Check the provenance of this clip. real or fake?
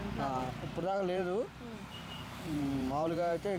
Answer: fake